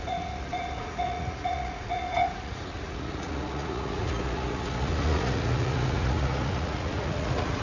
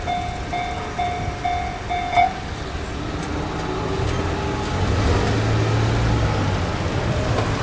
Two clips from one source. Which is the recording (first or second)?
second